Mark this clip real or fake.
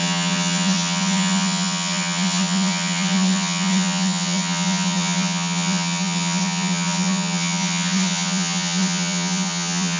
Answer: fake